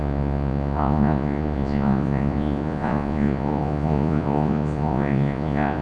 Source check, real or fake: fake